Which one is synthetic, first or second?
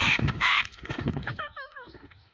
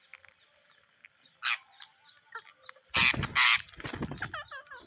first